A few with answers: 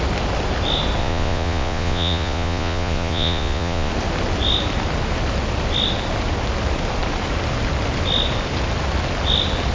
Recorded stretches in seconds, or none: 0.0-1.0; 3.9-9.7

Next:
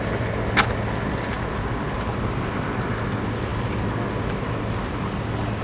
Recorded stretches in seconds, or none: 0.0-5.6

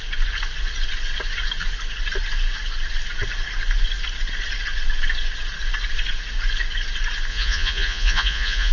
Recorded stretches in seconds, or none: 0.0-7.3

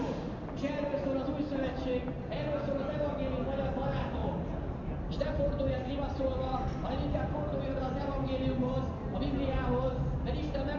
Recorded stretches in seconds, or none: 0.0-10.8

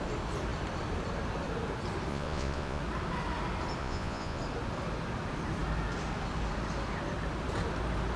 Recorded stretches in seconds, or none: 0.0-2.1; 2.8-3.8; 4.4-8.2

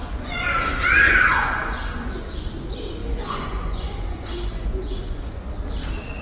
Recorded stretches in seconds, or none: 2.4-3.0; 5.5-6.2

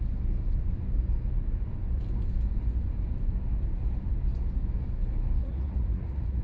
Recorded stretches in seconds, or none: 0.0-5.4

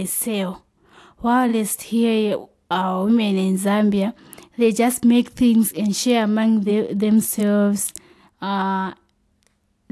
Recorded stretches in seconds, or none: 0.0-9.9